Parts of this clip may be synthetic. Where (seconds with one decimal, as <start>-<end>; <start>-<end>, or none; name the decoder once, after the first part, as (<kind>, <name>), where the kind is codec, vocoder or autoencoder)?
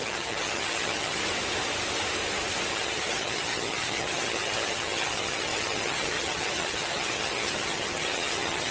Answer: 0.0-1.2 (vocoder, HiFi-GAN); 2.7-8.7